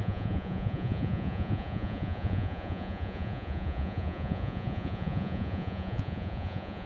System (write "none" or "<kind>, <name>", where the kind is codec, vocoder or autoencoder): vocoder, Vocos